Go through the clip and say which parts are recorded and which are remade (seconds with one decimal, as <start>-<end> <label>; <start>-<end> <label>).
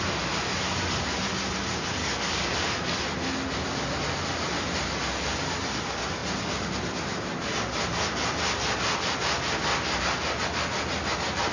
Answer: 0.0-2.0 recorded; 2.0-2.5 remade; 2.5-11.5 recorded